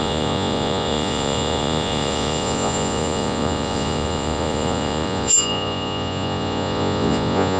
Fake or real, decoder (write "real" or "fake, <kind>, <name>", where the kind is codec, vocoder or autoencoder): fake, vocoder, Vocos